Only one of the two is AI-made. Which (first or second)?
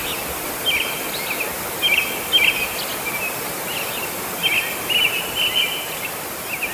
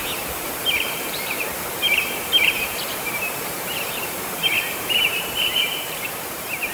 second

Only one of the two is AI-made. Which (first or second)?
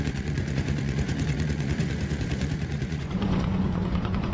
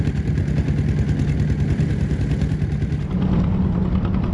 first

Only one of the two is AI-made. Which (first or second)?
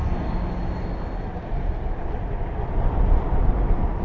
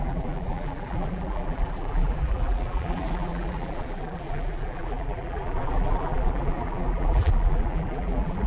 second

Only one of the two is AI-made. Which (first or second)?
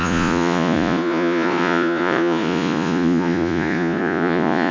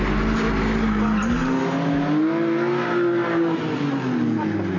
first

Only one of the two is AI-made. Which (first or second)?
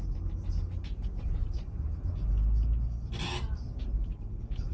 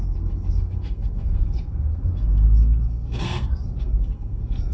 second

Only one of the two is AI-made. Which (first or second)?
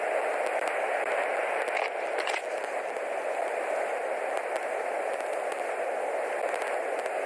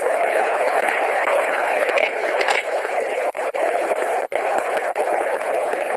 second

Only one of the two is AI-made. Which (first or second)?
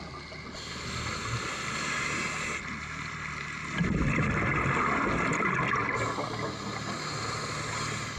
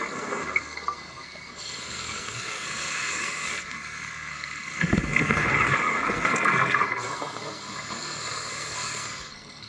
second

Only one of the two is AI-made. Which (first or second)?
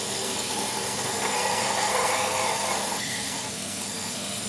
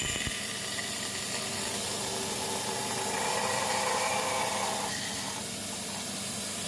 first